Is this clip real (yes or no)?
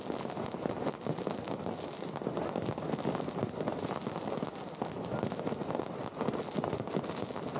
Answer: yes